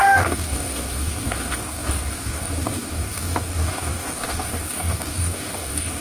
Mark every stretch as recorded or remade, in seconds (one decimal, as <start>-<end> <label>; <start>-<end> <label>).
0.0-6.0 remade